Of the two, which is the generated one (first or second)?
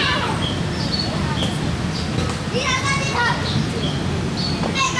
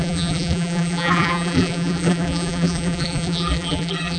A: second